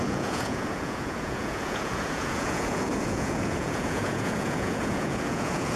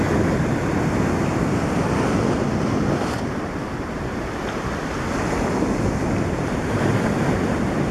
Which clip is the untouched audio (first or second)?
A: second